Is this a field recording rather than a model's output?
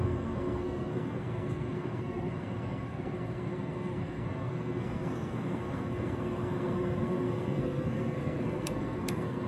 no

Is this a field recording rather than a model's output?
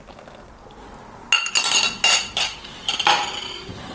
yes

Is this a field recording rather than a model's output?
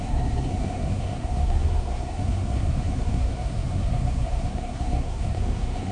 no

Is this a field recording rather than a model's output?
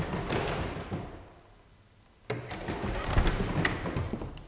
yes